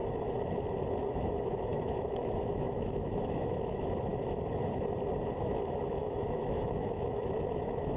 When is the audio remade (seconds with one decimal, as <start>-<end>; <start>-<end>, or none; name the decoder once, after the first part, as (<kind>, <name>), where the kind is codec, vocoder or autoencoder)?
1.1-4.1 (autoencoder, DAC-VAE); 5.4-8.0